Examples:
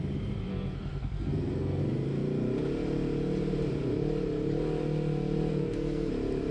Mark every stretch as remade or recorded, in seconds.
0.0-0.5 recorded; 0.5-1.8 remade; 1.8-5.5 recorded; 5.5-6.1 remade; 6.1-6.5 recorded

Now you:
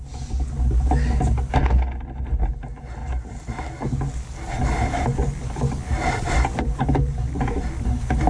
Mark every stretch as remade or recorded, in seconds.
0.0-3.0 recorded; 3.0-3.6 remade; 3.6-5.9 recorded; 5.9-7.4 remade; 7.4-8.3 recorded

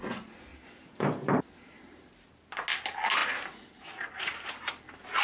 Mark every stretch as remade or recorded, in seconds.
0.0-0.5 recorded; 0.5-2.1 remade; 2.1-3.2 recorded; 3.2-4.7 remade; 4.7-5.2 recorded

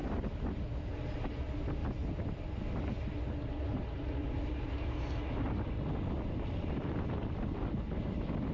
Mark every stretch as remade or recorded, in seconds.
0.0-8.5 recorded

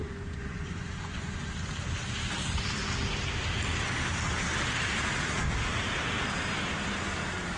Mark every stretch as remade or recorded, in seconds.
0.0-1.5 remade; 1.5-7.6 recorded

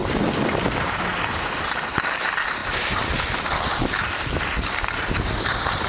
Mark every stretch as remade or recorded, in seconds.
0.0-5.9 recorded

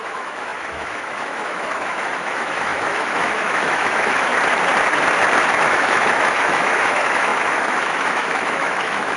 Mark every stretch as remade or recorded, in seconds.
0.0-4.3 remade; 4.3-5.6 recorded; 5.6-9.2 remade

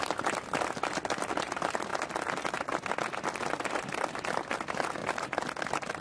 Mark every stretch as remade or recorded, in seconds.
0.0-6.0 recorded